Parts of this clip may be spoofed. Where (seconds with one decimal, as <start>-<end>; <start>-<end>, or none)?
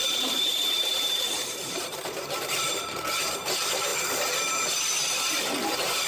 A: 0.0-3.9; 5.3-6.1